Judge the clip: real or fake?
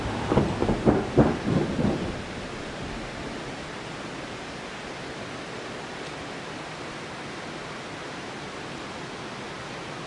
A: real